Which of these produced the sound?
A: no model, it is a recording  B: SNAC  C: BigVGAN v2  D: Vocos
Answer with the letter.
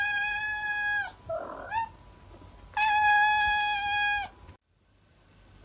A